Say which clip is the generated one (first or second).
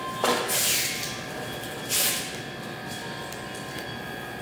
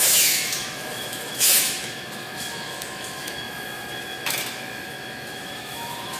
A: second